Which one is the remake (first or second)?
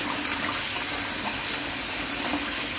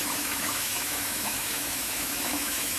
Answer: second